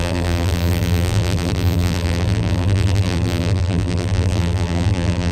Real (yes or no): no